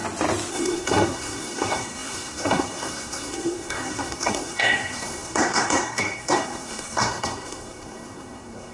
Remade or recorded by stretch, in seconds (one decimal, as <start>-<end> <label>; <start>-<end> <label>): 0.0-0.5 recorded; 0.5-8.7 remade